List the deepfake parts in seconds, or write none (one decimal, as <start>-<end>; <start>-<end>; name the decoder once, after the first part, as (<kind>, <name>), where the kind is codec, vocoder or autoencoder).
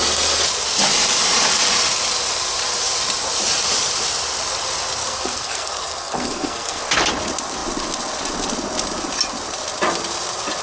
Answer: 5.0-6.8 (codec, SNAC)